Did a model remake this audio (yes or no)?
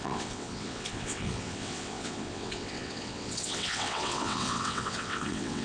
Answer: yes